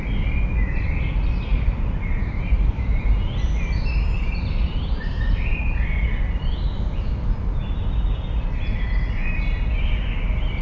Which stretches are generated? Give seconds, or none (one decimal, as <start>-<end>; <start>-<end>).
1.5-5.6